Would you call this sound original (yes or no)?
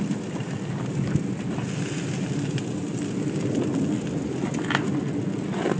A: yes